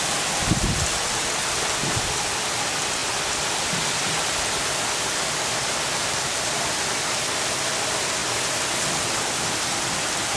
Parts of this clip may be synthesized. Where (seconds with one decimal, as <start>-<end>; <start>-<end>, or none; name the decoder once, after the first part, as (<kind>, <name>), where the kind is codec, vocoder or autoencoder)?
none